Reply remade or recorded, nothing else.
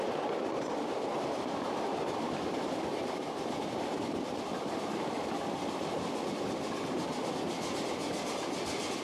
recorded